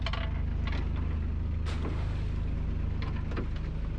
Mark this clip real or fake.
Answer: real